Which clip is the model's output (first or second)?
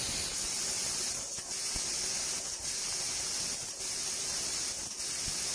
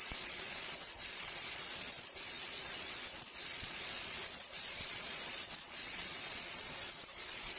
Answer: second